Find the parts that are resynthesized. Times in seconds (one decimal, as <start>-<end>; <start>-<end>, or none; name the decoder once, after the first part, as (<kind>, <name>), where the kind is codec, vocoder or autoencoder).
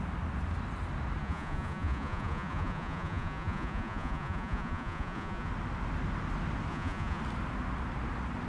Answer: 1.2-5.5 (vocoder, Vocos); 6.7-7.2